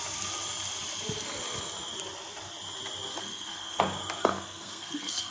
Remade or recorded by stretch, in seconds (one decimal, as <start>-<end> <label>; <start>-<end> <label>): 0.0-3.1 recorded; 3.1-3.8 remade; 3.8-4.2 recorded; 4.2-5.3 remade